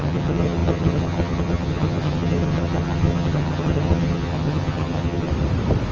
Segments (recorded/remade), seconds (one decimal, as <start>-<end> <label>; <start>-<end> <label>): 0.0-5.3 remade; 5.3-5.9 recorded